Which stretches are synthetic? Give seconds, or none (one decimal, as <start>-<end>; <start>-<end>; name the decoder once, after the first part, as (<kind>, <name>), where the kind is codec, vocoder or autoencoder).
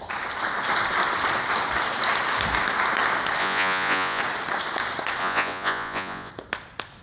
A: 3.4-4.2 (vocoder, Vocos); 5.2-6.3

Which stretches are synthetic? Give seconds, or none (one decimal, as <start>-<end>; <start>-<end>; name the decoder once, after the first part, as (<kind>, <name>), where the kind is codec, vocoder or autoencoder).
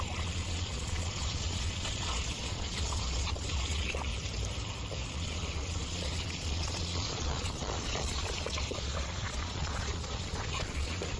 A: 0.0-4.1 (vocoder, Vocos); 5.1-11.2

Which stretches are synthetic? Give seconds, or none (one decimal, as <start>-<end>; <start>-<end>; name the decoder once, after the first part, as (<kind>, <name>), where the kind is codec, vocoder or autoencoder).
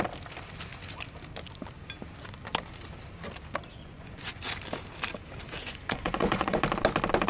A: 3.7-4.4 (vocoder, Vocos); 5.6-6.6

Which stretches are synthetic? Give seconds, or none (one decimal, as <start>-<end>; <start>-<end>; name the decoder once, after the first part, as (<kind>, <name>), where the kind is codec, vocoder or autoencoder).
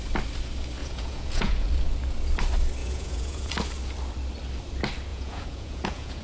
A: 0.8-1.7 (vocoder, Vocos); 2.8-3.5; 5.1-6.2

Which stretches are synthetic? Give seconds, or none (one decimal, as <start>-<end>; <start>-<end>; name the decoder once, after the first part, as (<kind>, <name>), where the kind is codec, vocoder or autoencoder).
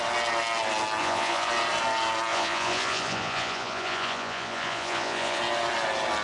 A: 1.0-1.5 (vocoder, Vocos); 2.3-5.4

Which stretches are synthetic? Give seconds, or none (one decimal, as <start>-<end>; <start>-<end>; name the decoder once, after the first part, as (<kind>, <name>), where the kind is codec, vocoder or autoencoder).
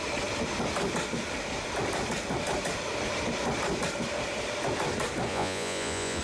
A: 5.3-6.2 (vocoder, Vocos)